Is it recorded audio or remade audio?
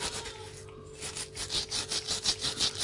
recorded